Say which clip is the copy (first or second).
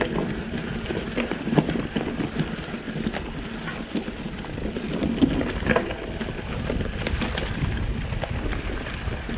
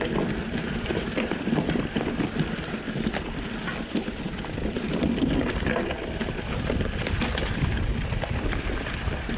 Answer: second